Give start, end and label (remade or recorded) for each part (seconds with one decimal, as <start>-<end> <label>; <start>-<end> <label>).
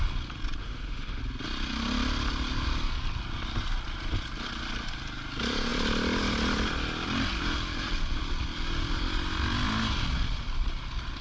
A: 0.0-0.6 recorded; 0.6-1.2 remade; 1.2-11.2 recorded